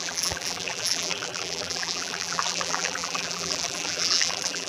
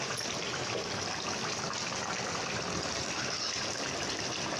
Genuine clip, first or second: second